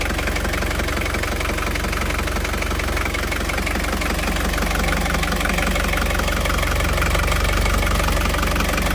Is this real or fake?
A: real